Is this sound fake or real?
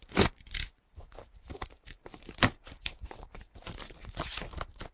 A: fake